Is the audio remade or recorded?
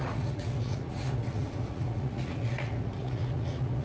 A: remade